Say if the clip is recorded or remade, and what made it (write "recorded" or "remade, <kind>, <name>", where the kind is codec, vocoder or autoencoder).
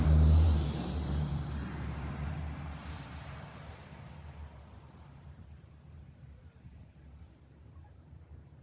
remade, vocoder, BigVGAN v2